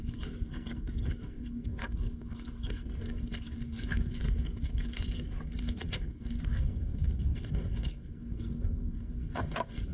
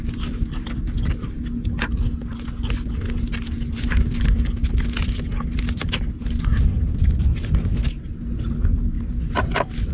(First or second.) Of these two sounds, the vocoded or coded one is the first